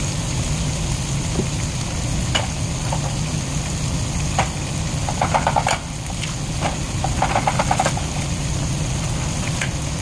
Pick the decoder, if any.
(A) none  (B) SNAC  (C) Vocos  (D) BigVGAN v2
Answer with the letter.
A